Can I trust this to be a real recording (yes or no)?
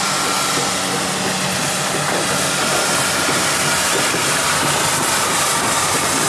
yes